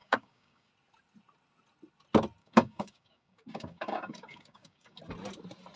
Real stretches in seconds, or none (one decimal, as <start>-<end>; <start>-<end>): 0.7-2.4; 5.0-5.8